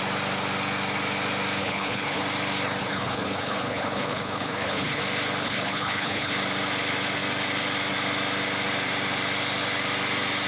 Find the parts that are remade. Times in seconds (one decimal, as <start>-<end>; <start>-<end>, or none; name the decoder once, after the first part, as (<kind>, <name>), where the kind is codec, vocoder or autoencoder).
1.6-2.2 (codec, HILCodec); 2.8-5.0; 5.4-6.3